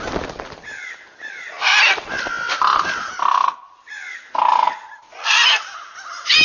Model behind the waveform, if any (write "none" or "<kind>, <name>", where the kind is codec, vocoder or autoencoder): none